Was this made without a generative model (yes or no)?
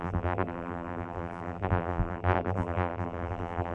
no